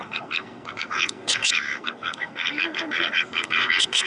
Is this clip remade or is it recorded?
remade